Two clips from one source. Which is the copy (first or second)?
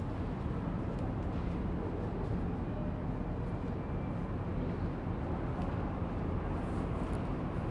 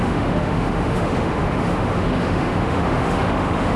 second